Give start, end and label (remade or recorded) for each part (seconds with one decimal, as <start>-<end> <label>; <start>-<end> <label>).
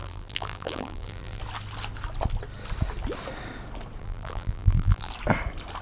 0.0-1.4 remade; 1.4-4.0 recorded; 4.0-5.1 remade; 5.1-5.8 recorded